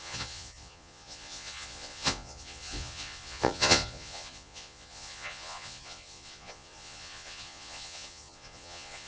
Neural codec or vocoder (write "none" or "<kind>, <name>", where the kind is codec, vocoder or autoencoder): vocoder, Vocos